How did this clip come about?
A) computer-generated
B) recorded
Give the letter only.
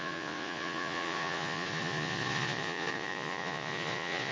A